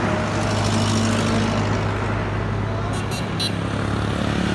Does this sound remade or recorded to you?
recorded